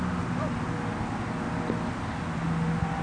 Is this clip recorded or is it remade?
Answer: recorded